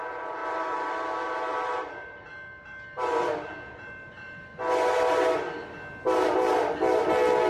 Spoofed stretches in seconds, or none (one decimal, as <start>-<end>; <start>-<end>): 0.0-2.3; 3.7-4.5